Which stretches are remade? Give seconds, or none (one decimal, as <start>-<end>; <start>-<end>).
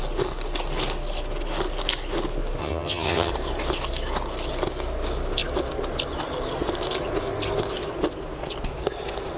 2.6-3.3